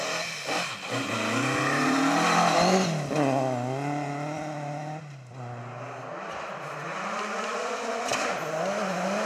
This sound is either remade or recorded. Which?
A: recorded